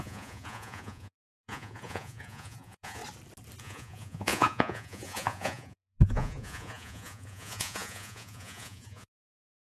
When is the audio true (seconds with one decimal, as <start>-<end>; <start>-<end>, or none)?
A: 3.0-3.6